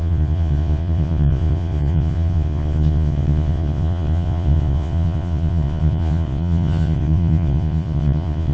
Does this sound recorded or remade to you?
remade